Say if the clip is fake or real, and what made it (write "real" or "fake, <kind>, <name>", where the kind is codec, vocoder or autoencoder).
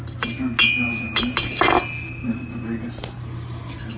real